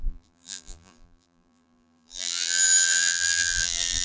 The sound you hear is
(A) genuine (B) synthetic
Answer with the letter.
B